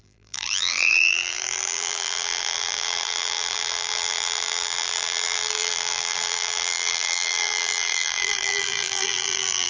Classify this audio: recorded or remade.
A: remade